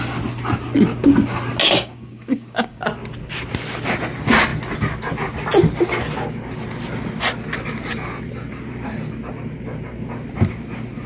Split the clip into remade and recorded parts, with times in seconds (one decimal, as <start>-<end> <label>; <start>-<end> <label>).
0.0-1.6 recorded; 1.6-2.8 remade; 2.8-11.1 recorded